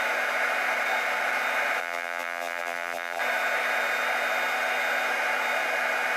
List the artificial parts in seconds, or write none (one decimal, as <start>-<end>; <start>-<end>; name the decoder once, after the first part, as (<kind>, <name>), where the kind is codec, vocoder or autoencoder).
1.8-3.2 (vocoder, BigVGAN v2)